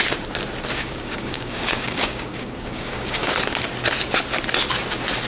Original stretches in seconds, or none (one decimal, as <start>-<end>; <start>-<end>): 0.0-0.7; 3.3-5.3